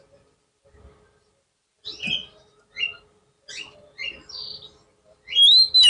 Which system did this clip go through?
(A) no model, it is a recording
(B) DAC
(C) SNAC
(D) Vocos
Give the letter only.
A